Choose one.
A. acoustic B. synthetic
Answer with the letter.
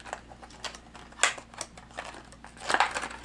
A